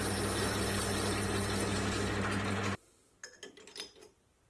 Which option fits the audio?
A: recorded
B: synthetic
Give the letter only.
A